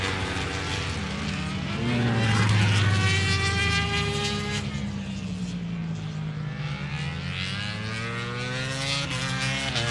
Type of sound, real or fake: real